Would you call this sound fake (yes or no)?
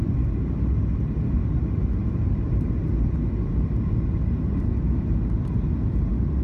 no